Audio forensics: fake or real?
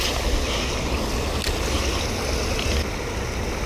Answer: real